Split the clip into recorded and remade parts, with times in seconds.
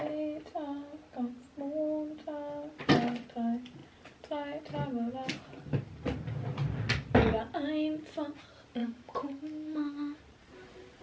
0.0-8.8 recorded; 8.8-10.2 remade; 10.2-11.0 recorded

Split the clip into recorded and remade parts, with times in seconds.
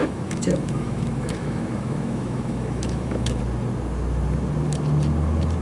0.0-3.4 remade; 3.4-5.6 recorded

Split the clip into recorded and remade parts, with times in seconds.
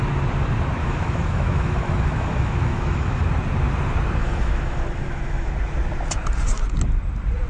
0.0-0.8 recorded; 0.8-3.2 remade; 3.2-4.2 recorded; 4.2-5.5 remade; 5.5-7.5 recorded